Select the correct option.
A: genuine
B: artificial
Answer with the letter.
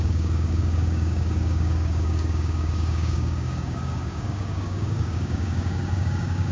B